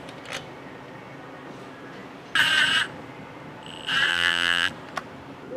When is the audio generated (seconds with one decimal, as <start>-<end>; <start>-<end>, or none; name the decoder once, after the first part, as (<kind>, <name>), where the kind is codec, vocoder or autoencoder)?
4.1-4.7 (vocoder, BigVGAN v2)